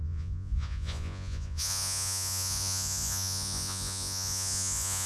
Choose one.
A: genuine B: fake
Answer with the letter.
B